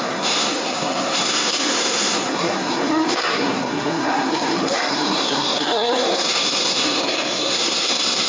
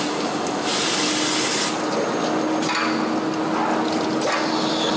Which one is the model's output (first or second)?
first